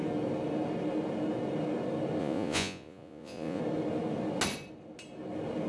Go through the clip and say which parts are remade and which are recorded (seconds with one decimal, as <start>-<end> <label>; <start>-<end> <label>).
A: 0.0-2.2 recorded; 2.2-3.6 remade; 3.6-5.7 recorded